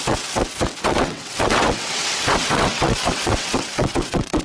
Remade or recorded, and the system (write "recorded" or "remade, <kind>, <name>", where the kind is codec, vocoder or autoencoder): remade, vocoder, WaveNeXt